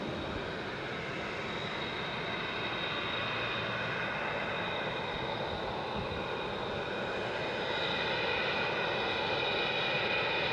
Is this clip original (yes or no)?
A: yes